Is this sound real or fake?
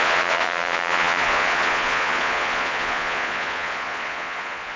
fake